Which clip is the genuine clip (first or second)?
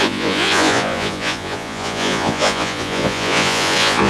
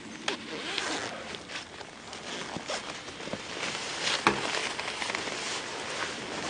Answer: second